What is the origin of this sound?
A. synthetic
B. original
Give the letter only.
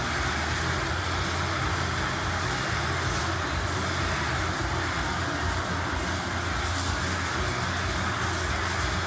B